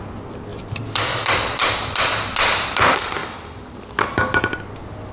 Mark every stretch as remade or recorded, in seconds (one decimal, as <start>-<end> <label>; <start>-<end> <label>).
0.0-5.1 recorded